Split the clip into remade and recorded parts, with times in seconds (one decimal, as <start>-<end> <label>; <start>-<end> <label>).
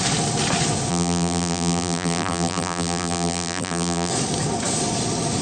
0.0-0.9 recorded; 0.9-4.1 remade; 4.1-5.4 recorded